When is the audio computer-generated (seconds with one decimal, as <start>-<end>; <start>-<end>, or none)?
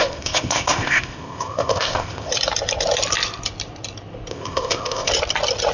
0.0-2.3; 4.3-5.1